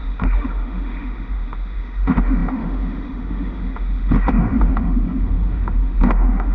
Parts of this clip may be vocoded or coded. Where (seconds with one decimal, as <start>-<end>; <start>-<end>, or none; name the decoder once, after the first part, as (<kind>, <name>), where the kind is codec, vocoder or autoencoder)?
0.0-6.5 (autoencoder, DAC-VAE)